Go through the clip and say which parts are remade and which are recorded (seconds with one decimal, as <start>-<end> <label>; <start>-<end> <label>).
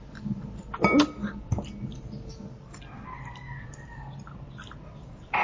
0.0-5.4 recorded